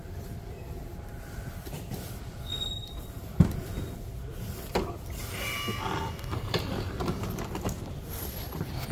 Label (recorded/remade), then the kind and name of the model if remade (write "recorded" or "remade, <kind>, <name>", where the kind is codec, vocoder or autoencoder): remade, vocoder, BigVGAN v2